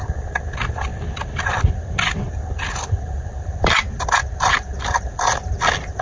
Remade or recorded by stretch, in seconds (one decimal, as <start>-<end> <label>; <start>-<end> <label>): 0.0-6.0 recorded